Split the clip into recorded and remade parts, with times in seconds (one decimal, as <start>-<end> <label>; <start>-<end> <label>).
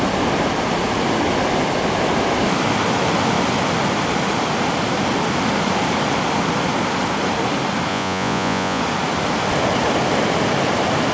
0.0-7.9 recorded; 7.9-8.8 remade; 8.8-11.1 recorded